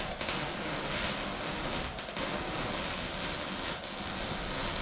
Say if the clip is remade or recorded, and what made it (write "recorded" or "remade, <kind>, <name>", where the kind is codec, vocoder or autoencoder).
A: recorded